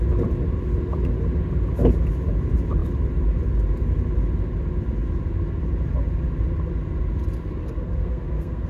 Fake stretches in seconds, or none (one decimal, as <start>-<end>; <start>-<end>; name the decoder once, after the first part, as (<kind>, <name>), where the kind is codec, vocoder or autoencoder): 7.6-8.7 (codec, SNAC)